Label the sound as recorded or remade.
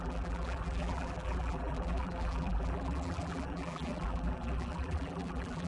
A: remade